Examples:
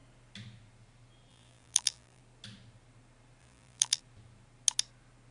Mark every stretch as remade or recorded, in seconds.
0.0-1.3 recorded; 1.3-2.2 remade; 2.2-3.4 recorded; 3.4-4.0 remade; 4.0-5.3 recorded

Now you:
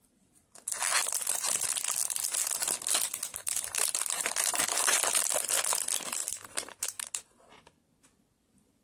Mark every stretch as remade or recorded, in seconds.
0.0-3.4 recorded; 3.4-4.6 remade; 4.6-6.2 recorded; 6.2-7.1 remade; 7.1-8.8 recorded

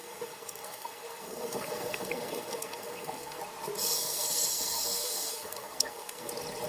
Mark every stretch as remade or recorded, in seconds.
0.0-3.4 remade; 3.4-3.8 recorded; 3.8-6.3 remade; 6.3-6.7 recorded

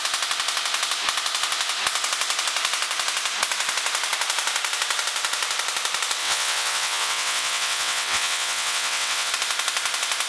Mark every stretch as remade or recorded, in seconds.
0.0-6.2 recorded; 6.2-9.3 remade; 9.3-10.3 recorded

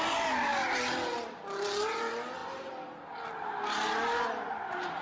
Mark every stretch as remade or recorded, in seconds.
0.0-5.0 recorded

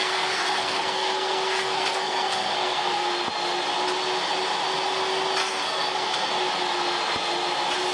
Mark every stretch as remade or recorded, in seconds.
0.0-3.1 remade; 3.1-5.4 recorded; 5.4-6.3 remade; 6.3-7.9 recorded

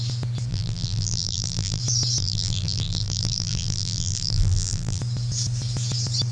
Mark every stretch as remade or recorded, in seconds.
0.0-0.5 recorded; 0.5-1.8 remade; 1.8-2.2 recorded; 2.2-5.0 remade; 5.0-6.3 recorded